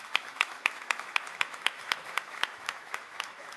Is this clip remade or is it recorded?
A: remade